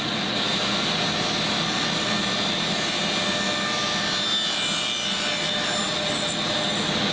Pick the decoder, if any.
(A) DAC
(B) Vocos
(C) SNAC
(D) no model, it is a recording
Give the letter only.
D